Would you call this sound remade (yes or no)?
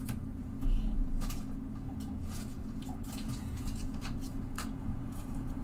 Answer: yes